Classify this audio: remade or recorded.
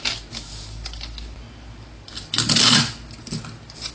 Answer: recorded